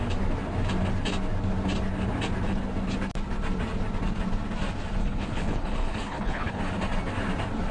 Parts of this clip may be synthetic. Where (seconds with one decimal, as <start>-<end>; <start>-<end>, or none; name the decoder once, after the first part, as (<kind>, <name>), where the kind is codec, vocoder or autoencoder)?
5.0-6.6 (codec, HILCodec)